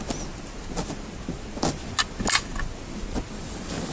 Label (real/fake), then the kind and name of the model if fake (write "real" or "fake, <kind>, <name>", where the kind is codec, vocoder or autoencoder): real